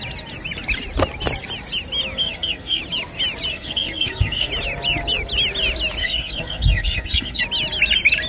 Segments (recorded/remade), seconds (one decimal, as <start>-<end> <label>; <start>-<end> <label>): 0.0-2.2 recorded; 2.2-2.8 remade; 2.8-3.5 recorded; 3.5-4.5 remade; 4.5-6.0 recorded; 6.0-7.4 remade; 7.4-8.3 recorded